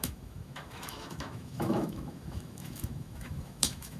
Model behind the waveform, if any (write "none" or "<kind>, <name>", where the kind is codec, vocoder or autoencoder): autoencoder, DAC-VAE